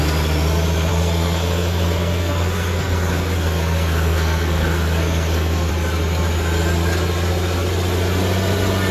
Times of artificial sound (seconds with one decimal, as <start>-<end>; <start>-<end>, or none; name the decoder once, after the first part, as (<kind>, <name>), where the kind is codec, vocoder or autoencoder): 0.9-5.7 (codec, SNAC)